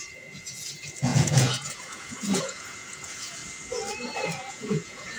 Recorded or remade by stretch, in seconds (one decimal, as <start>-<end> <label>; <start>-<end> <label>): 0.0-3.4 remade; 3.4-4.5 recorded; 4.5-5.2 remade